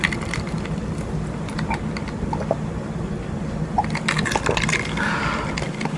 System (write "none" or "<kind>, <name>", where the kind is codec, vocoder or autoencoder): none